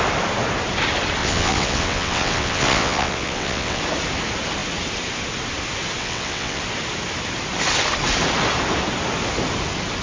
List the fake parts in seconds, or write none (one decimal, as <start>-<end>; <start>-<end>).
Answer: 1.2-3.8; 6.0-6.6